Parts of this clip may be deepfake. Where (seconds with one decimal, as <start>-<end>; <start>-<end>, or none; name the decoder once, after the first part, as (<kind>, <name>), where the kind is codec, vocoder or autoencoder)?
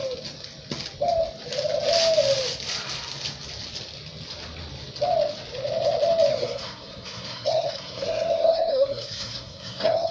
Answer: 6.3-10.1 (codec, SNAC)